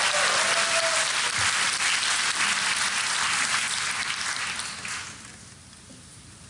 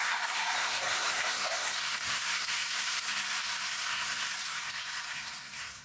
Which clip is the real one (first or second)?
first